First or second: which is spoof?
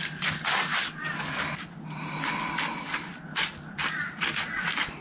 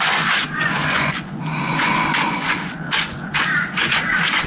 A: second